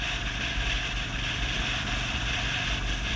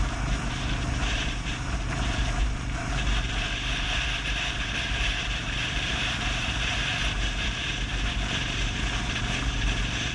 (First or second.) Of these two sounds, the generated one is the second